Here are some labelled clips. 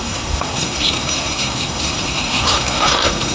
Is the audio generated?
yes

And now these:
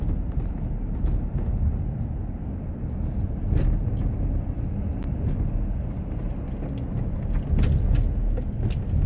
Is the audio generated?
no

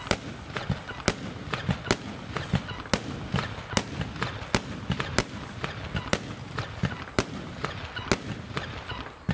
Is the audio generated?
no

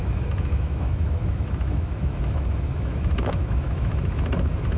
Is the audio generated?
yes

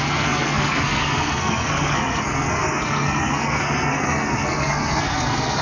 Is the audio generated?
yes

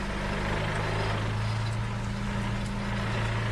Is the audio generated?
no